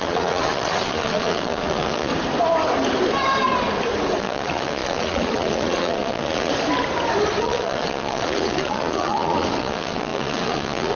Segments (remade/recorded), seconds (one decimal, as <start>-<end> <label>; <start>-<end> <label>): 0.0-2.1 remade; 2.1-4.2 recorded; 4.2-6.5 remade; 6.5-7.4 recorded; 7.4-10.9 remade